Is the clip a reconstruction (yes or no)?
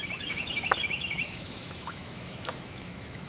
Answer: yes